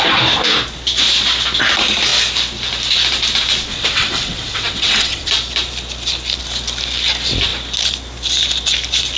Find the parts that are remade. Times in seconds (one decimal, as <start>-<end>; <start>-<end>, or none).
3.7-5.3